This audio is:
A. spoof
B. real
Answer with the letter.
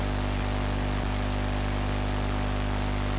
B